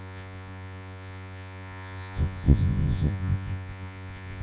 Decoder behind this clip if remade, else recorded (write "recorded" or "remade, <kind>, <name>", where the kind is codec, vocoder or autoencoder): remade, vocoder, Vocos